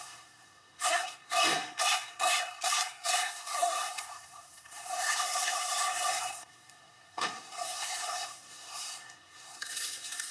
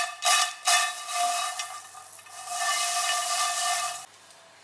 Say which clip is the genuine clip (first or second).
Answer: second